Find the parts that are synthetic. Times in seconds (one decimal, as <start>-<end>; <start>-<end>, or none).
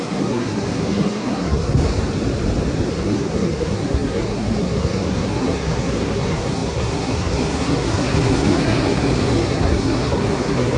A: 0.0-1.9; 2.9-10.8